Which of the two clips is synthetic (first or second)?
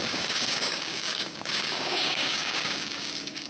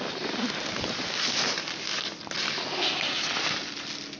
first